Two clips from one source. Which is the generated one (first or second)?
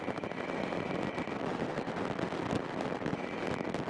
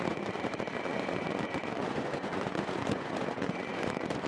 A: second